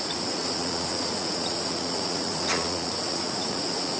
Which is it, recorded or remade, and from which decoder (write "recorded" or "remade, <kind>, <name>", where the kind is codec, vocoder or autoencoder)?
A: remade, vocoder, Vocos